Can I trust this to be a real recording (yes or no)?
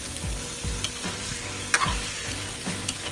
yes